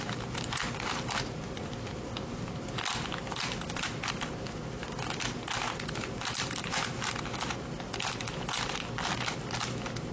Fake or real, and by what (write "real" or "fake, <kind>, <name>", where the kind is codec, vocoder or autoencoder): real